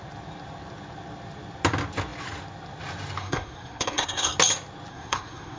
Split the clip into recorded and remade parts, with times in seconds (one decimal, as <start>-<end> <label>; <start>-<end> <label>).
0.0-3.2 recorded; 3.2-4.3 remade; 4.3-4.9 recorded; 4.9-5.6 remade